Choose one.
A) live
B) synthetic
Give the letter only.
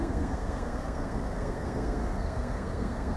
B